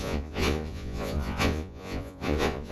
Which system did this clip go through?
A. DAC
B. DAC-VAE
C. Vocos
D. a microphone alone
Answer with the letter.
C